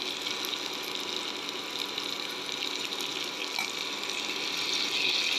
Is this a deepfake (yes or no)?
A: no